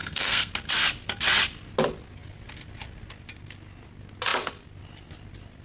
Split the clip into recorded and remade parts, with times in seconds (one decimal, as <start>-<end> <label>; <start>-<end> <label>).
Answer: 0.0-0.5 remade; 0.5-5.6 recorded